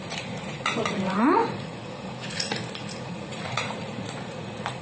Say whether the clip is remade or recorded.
remade